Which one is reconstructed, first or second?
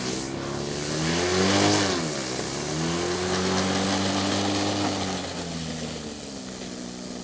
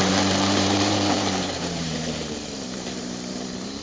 second